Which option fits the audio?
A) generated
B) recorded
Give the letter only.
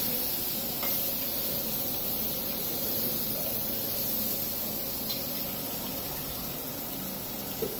B